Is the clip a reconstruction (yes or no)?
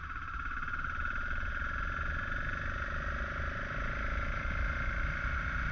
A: no